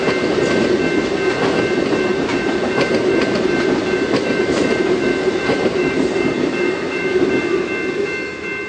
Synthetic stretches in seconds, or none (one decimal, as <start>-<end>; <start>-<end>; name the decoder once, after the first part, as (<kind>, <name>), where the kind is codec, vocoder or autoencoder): 2.1-7.3 (vocoder, BigVGAN v2)